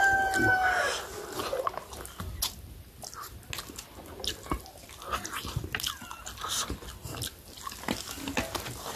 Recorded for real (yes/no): yes